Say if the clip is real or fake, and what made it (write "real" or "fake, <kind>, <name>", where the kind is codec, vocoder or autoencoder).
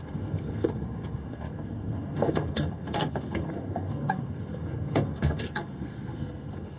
fake, codec, SNAC